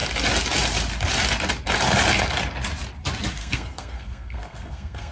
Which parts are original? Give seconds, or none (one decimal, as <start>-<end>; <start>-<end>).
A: 0.0-3.4